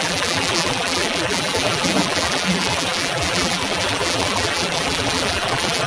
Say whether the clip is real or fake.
fake